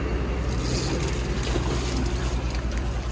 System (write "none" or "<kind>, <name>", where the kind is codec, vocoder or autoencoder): none